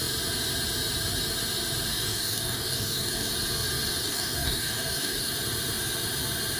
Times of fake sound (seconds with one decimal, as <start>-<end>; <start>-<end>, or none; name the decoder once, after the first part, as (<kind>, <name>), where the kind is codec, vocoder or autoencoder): 1.9-3.3 (codec, DAC); 4.0-5.3